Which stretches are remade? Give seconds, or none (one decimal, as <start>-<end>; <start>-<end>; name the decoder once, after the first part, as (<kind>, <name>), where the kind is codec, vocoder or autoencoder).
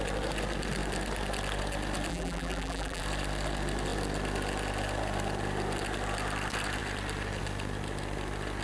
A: 2.1-3.0 (vocoder, BigVGAN v2)